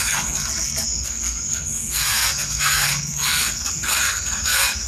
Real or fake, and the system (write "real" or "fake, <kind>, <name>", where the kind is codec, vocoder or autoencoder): fake, codec, SNAC